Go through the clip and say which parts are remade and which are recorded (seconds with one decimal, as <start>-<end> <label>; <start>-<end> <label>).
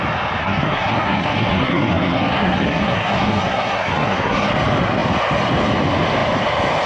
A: 0.0-0.4 recorded; 0.4-4.5 remade; 4.5-6.9 recorded